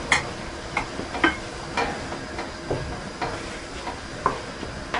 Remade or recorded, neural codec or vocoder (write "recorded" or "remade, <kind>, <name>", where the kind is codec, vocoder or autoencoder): recorded